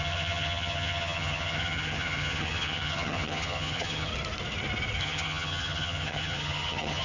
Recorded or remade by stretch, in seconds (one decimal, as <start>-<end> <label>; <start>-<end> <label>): 0.0-4.1 remade; 4.1-5.0 recorded; 5.0-7.0 remade